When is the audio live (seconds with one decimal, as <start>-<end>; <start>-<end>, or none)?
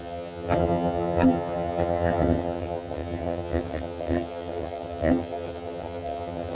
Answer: none